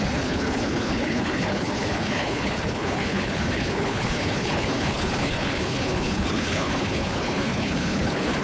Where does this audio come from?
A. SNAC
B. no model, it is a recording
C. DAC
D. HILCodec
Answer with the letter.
D